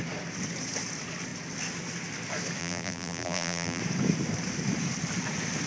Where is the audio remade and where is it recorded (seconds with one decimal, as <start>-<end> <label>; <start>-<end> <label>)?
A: 0.0-2.6 recorded; 2.6-3.8 remade; 3.8-5.7 recorded